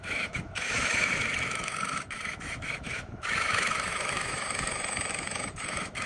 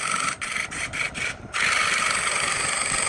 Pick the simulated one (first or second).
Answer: first